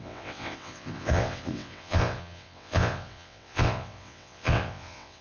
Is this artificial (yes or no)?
yes